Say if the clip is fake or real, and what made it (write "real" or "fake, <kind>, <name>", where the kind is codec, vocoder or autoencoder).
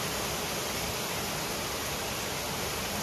real